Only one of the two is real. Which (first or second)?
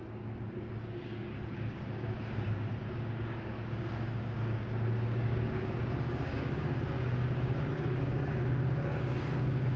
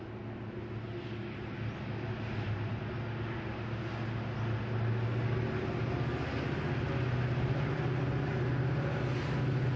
second